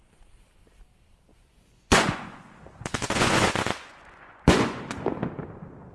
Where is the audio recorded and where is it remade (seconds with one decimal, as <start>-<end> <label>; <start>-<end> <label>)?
0.0-1.3 recorded; 1.3-4.8 remade; 4.8-5.9 recorded